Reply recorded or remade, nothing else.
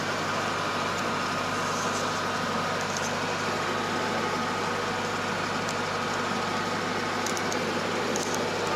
recorded